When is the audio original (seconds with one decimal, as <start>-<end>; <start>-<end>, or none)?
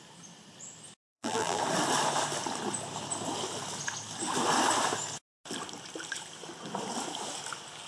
0.0-1.0; 1.6-7.9